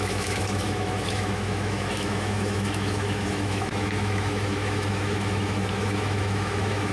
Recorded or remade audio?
remade